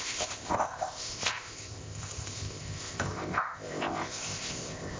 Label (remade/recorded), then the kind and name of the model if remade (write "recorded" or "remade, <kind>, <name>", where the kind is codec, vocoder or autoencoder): remade, codec, ZipCodec